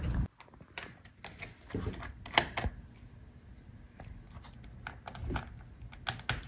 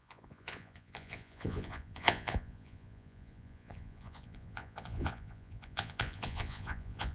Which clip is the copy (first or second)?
second